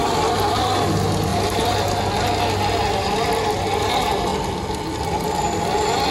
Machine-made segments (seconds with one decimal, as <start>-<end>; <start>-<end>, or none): none

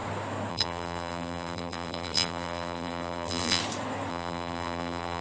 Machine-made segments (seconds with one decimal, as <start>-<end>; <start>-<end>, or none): 0.5-3.6; 4.1-5.2

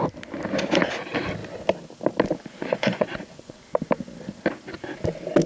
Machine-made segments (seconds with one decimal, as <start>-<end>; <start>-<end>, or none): 2.6-3.7